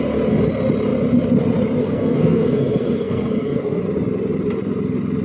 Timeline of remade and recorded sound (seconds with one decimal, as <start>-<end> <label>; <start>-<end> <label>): 0.0-1.8 recorded; 1.8-3.8 remade; 3.8-5.2 recorded